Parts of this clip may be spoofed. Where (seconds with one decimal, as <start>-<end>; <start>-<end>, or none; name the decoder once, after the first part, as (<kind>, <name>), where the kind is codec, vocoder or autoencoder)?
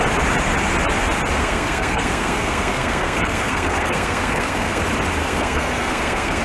1.4-4.8 (codec, SNAC); 5.2-6.4